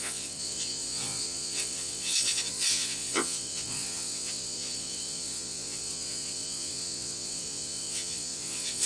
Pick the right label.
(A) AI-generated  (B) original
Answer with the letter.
A